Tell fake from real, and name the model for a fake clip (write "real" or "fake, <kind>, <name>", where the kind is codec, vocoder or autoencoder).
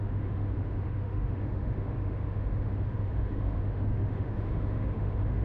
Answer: fake, autoencoder, DAC-VAE